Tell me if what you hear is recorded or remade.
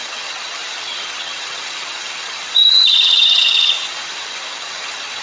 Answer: remade